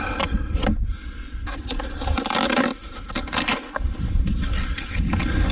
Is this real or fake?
real